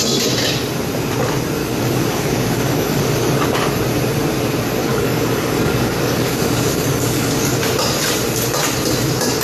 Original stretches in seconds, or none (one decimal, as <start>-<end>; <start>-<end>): 0.0-1.6; 3.8-4.8; 7.6-9.4